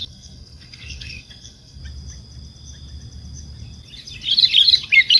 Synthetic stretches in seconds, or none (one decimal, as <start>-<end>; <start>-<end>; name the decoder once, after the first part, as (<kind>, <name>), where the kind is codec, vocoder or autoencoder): 0.0-1.8 (codec, SNAC)